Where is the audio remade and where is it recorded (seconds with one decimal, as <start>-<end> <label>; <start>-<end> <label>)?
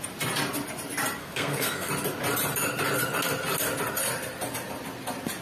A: 0.0-1.2 recorded; 1.2-1.9 remade; 1.9-5.4 recorded